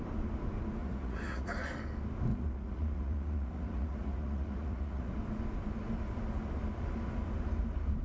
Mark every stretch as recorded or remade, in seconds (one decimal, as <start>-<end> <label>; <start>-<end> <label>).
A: 0.0-0.8 recorded; 0.8-1.5 remade; 1.5-2.3 recorded; 2.3-5.1 remade; 5.1-8.0 recorded